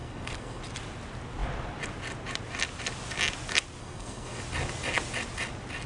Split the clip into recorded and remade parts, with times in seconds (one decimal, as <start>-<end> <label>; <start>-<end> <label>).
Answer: 0.0-0.6 remade; 0.6-3.8 recorded; 3.8-4.4 remade; 4.4-5.9 recorded